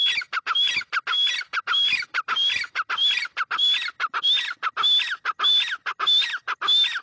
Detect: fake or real real